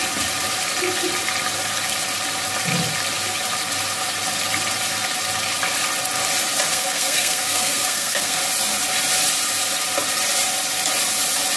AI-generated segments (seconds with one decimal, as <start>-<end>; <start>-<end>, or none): 6.7-8.4